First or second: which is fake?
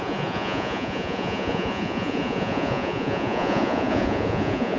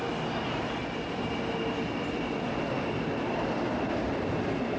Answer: first